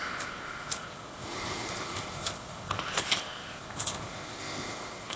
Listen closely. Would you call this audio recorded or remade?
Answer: remade